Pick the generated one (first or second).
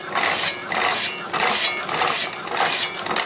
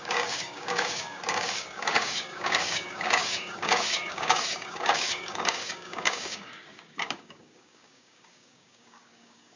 second